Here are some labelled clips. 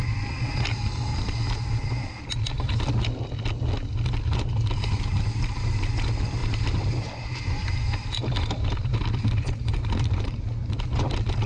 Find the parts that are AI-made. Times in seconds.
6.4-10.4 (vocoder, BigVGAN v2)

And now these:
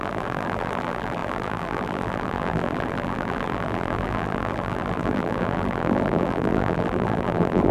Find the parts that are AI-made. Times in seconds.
0.0-7.7 (vocoder, BigVGAN v2)

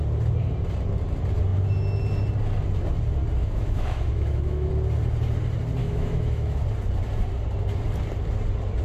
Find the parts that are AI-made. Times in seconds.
3.4-4.7 (autoencoder, DAC-VAE); 5.8-6.6

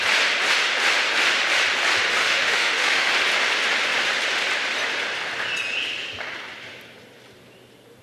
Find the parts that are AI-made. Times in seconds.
2.2-3.1 (autoencoder, DAC-VAE)

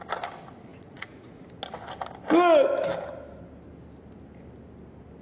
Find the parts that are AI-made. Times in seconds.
0.7-1.4 (vocoder, Vocos)

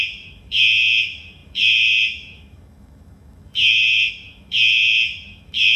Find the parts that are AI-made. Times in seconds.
0.0-5.8 (autoencoder, DAC-VAE)